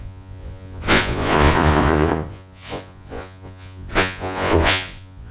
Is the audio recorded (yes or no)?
no